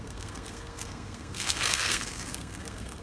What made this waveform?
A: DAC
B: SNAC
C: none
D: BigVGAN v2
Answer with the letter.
B